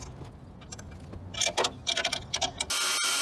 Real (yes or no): yes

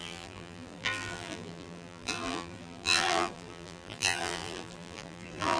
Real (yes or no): no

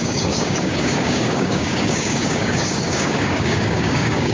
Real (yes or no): no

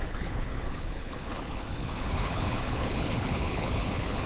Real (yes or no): no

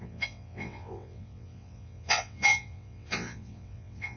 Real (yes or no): no